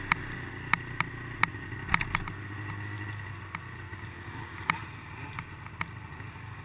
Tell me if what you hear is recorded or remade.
recorded